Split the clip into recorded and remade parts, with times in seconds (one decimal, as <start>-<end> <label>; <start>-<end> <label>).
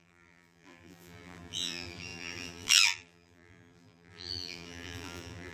0.0-5.5 remade